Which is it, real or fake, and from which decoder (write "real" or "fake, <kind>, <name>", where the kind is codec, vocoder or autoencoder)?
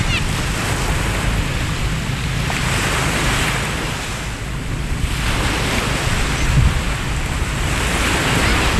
real